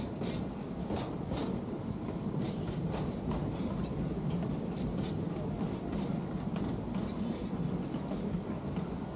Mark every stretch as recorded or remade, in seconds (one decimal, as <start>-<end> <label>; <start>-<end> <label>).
0.0-9.2 recorded